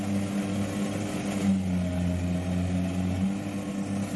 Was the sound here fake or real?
real